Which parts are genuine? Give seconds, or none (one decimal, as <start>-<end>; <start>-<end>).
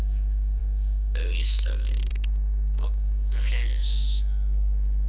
none